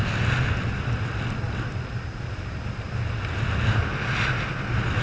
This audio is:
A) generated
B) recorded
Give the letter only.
B